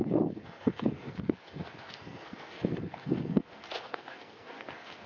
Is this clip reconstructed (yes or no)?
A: yes